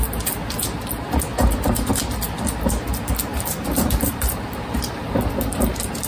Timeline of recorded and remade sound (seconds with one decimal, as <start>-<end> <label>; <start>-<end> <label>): 0.0-1.3 recorded; 1.3-1.9 remade; 1.9-3.3 recorded; 3.3-6.1 remade